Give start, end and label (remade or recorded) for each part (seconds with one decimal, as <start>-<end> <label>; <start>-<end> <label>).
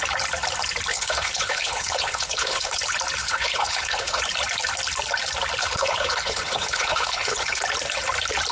0.0-0.9 recorded; 0.9-2.8 remade; 2.8-3.2 recorded; 3.2-4.2 remade; 4.2-5.6 recorded; 5.6-7.6 remade; 7.6-8.5 recorded